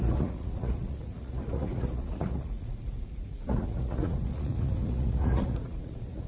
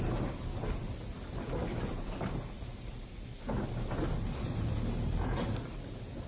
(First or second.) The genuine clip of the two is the second